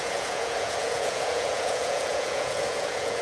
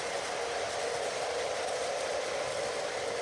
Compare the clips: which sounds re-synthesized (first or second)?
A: first